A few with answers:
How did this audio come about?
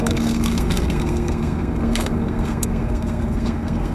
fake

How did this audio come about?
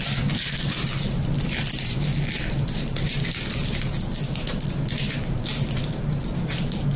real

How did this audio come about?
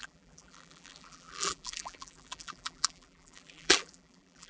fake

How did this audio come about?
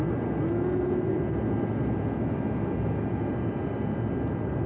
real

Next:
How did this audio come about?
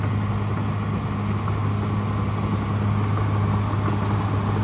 real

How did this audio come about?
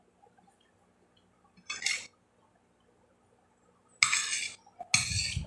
real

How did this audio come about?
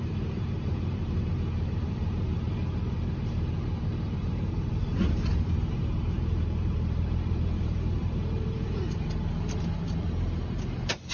fake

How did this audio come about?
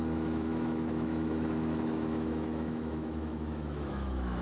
fake